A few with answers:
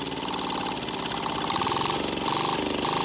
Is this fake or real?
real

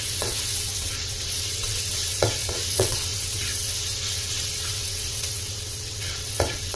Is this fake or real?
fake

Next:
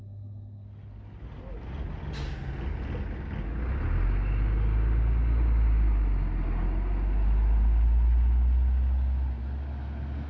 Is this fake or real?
real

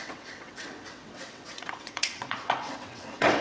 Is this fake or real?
fake